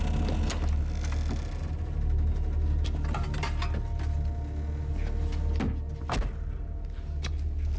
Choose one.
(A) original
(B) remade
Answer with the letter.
A